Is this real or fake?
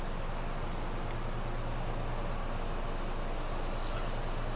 real